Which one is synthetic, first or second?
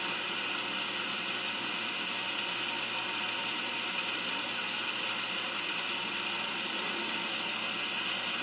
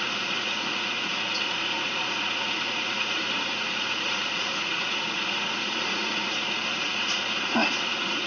second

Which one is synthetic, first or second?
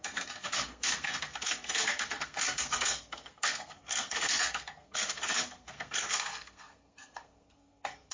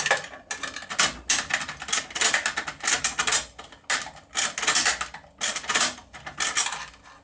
first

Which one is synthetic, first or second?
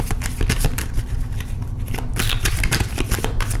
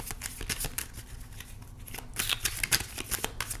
first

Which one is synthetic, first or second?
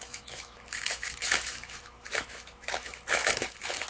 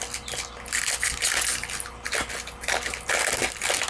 first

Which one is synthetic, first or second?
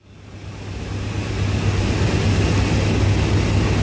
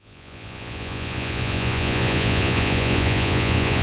second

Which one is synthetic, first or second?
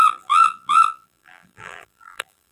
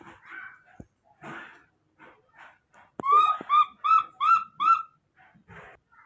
first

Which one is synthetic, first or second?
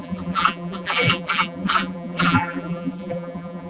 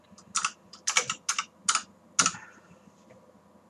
first